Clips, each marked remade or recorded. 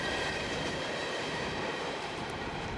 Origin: remade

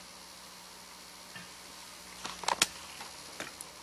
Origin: recorded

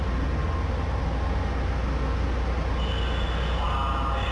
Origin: recorded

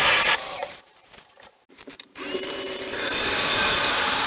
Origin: remade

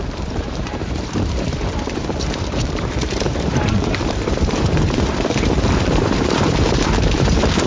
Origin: remade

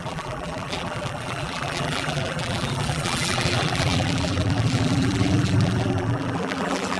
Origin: remade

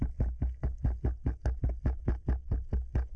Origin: recorded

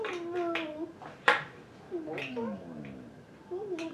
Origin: recorded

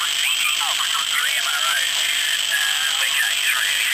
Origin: recorded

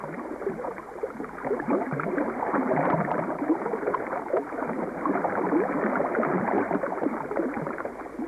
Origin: remade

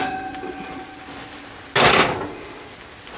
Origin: recorded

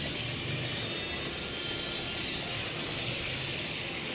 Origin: recorded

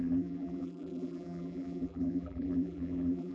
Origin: remade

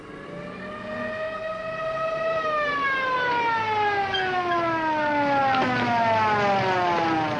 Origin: recorded